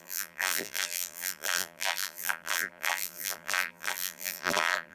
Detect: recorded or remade remade